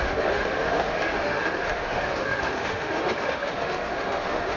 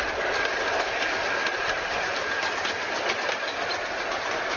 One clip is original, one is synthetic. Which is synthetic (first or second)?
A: first